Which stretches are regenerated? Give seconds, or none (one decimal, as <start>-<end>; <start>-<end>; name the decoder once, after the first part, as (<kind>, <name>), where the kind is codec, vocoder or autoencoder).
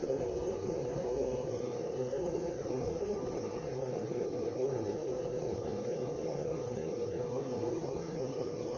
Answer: 0.0-8.8 (codec, SNAC)